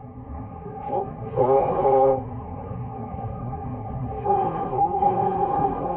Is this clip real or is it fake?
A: fake